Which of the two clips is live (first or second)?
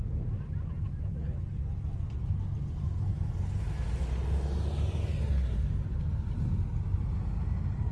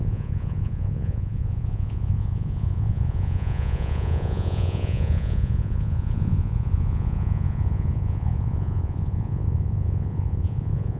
first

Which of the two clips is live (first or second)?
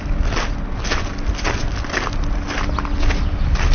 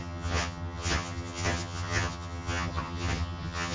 first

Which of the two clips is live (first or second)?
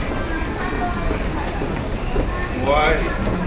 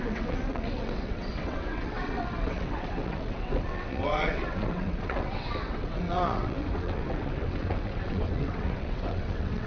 first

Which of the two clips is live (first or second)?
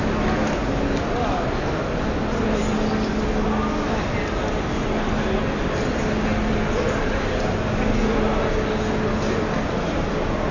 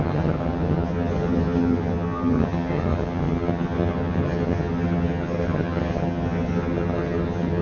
first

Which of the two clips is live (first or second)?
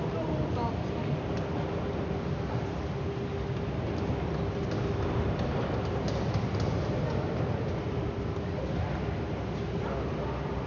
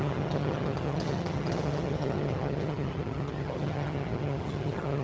first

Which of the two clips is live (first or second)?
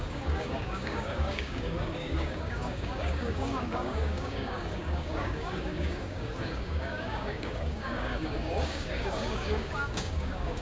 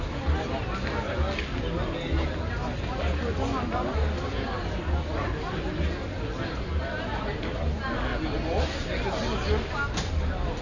second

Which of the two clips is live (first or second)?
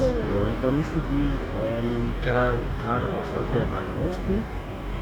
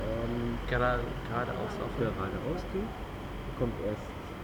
second